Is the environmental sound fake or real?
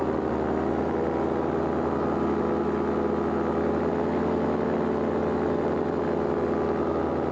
real